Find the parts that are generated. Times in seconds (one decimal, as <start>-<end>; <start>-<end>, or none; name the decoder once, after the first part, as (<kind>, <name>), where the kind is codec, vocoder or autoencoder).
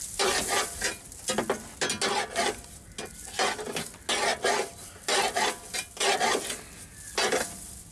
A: 4.3-4.9 (vocoder, BigVGAN v2)